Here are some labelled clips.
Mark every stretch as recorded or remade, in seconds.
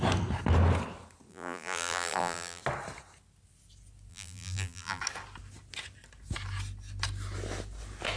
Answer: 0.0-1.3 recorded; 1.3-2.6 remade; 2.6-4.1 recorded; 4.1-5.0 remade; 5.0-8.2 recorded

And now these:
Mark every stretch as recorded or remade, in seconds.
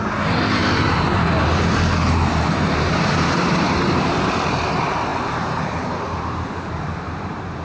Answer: 0.0-7.6 remade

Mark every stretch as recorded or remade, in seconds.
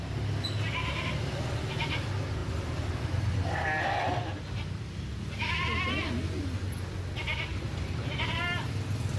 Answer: 0.0-9.2 recorded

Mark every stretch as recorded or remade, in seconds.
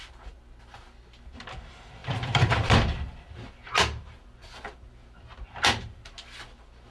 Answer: 0.0-2.0 recorded; 2.0-3.1 remade; 3.1-6.9 recorded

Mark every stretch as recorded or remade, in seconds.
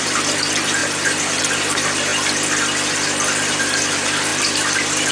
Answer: 0.0-2.1 remade; 2.1-2.9 recorded; 2.9-5.1 remade